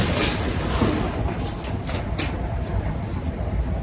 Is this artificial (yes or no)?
no